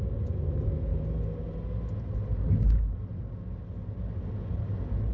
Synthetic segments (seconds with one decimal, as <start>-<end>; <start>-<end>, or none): none